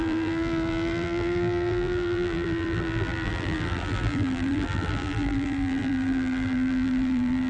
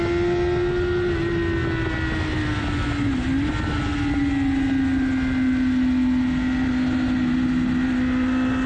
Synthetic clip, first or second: first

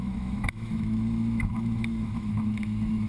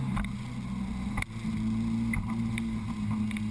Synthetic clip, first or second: first